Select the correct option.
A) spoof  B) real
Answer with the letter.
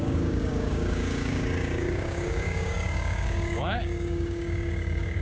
A